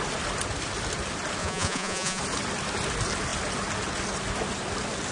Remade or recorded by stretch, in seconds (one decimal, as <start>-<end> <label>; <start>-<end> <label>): 0.0-1.4 recorded; 1.4-2.2 remade; 2.2-5.1 recorded